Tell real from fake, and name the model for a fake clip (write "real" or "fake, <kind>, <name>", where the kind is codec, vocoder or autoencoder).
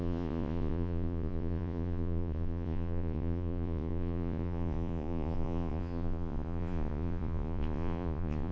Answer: fake, vocoder, Vocos